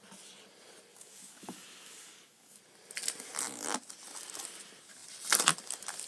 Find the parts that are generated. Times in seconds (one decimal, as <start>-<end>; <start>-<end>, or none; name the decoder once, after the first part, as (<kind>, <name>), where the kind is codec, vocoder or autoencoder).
0.9-2.6 (codec, DAC)